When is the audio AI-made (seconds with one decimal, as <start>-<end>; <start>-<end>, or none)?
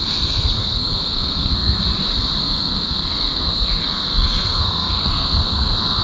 0.0-1.8; 2.4-6.0